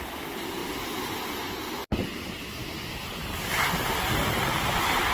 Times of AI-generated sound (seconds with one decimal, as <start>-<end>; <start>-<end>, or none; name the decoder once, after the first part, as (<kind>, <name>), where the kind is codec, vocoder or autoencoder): none